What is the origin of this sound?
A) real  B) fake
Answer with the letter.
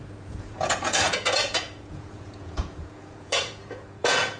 B